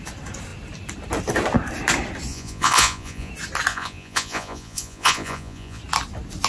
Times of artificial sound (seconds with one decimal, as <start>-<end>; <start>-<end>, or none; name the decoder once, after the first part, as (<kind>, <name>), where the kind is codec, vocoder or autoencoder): 2.3-3.3 (vocoder, Vocos); 3.7-5.8